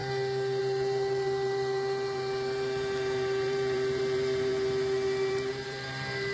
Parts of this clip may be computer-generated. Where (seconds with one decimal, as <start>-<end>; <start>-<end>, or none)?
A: 0.6-4.5; 5.3-6.3